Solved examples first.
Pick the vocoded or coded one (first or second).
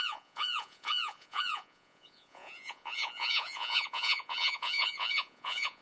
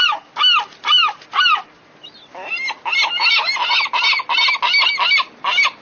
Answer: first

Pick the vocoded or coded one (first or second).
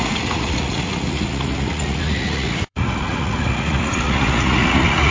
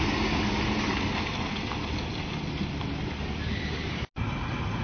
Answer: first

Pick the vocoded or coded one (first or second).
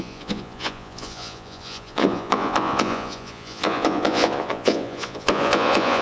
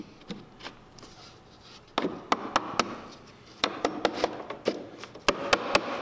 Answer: first